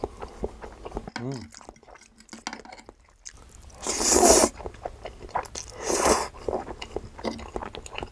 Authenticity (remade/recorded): recorded